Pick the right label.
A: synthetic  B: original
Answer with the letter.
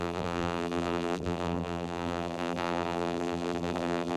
A